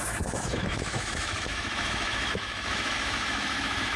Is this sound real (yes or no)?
no